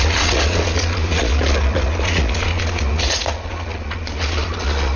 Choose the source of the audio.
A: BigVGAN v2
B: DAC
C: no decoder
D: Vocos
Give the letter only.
D